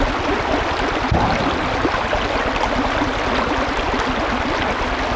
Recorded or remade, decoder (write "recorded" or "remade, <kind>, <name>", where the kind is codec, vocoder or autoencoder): recorded